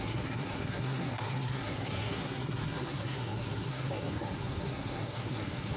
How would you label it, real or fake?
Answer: fake